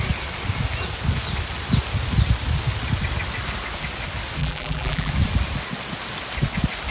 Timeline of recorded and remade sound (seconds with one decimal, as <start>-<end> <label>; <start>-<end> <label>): 0.0-4.4 recorded; 4.4-5.1 remade; 5.1-6.9 recorded